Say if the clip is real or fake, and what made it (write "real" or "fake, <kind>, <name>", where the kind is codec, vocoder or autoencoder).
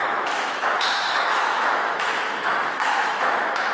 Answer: fake, autoencoder, DAC-VAE